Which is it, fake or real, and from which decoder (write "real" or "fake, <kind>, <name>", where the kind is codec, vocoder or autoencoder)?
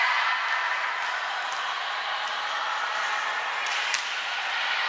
real